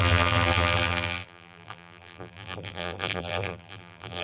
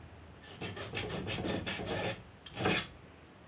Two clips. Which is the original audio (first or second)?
second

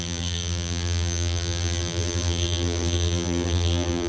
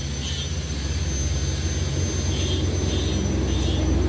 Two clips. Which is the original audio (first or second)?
second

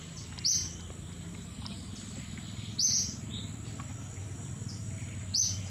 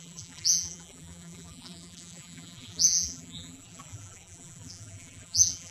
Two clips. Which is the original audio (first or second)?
first